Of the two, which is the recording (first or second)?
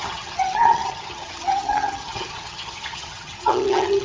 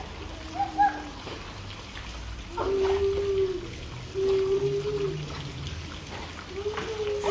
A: second